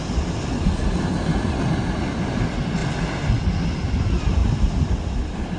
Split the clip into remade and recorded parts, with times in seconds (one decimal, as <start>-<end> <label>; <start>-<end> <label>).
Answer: 0.0-5.6 recorded